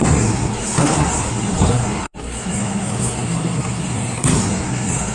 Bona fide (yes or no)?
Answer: no